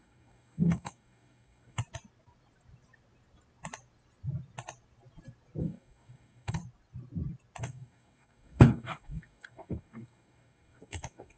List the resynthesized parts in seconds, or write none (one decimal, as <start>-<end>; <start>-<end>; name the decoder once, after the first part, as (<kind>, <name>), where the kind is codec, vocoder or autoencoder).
0.0-1.8 (codec, DAC); 5.6-6.6; 7.6-11.4